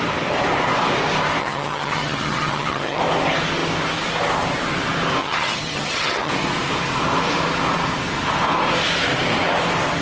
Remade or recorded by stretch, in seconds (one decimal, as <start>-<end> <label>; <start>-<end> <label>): 0.0-1.4 recorded; 1.4-3.0 remade; 3.0-5.2 recorded; 5.2-6.3 remade; 6.3-10.0 recorded